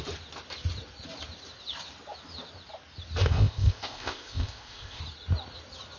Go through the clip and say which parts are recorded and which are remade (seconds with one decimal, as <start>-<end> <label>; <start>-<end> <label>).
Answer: 0.0-3.2 recorded; 3.2-5.0 remade; 5.0-6.0 recorded